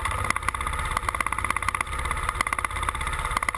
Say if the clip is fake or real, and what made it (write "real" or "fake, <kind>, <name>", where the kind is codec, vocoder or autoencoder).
real